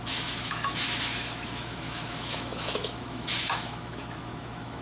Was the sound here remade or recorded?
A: remade